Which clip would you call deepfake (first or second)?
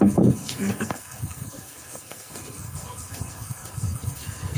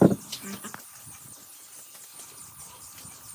first